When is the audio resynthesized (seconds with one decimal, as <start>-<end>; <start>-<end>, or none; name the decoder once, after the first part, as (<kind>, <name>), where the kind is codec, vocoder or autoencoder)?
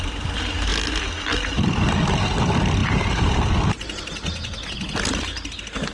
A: none